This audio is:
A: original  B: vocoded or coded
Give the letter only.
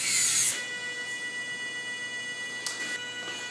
A